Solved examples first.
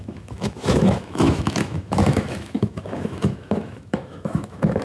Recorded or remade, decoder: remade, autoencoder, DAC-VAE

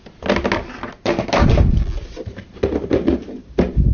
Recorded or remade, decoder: recorded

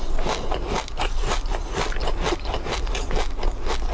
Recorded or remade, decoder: recorded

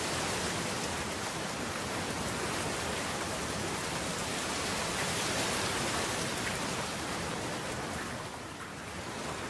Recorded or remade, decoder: recorded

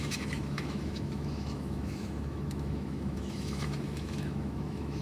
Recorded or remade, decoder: remade, autoencoder, DAC-VAE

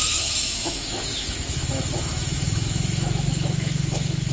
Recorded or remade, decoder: remade, autoencoder, DAC-VAE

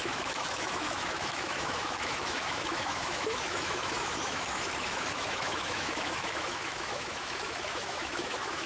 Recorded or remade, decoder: remade, autoencoder, DAC-VAE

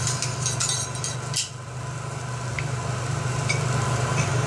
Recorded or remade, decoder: recorded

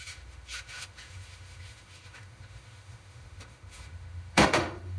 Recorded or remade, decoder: remade, autoencoder, DAC-VAE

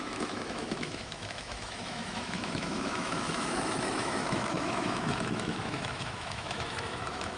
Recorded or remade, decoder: remade, autoencoder, DAC-VAE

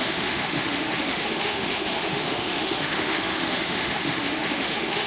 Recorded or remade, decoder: remade, autoencoder, DAC-VAE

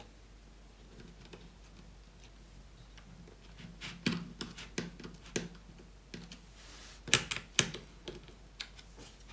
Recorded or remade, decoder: recorded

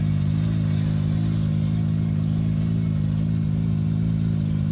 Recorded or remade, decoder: recorded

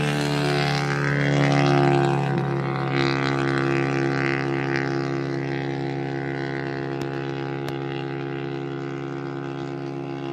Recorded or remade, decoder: recorded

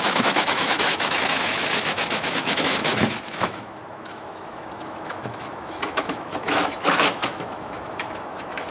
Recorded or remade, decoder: remade, autoencoder, DAC-VAE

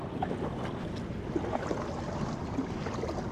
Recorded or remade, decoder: recorded